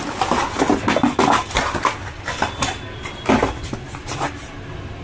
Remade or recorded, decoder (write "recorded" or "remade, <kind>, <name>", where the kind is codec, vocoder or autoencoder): recorded